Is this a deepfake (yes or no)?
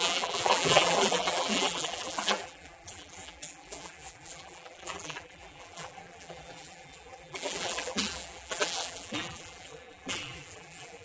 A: yes